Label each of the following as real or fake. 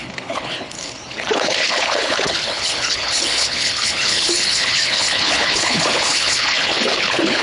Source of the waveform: fake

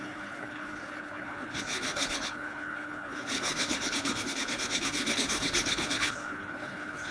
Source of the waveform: fake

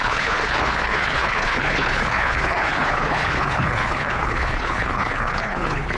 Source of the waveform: fake